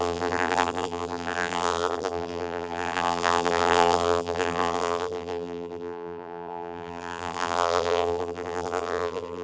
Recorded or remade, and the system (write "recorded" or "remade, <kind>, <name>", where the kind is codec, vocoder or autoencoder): remade, vocoder, BigVGAN v2